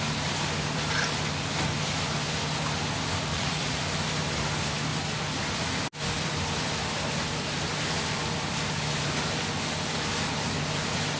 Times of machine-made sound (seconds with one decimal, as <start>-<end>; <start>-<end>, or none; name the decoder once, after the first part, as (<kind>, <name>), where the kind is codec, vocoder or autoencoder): 3.3-3.8 (vocoder, Vocos)